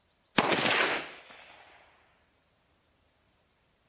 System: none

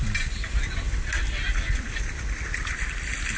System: none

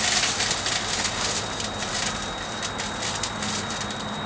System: none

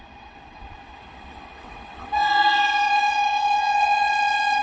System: vocoder, WaveNeXt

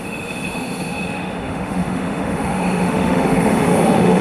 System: autoencoder, DAC-VAE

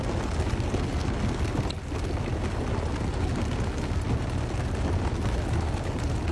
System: none